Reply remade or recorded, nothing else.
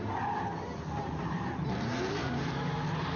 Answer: recorded